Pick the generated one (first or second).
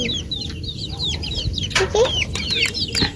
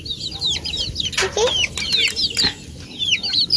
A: first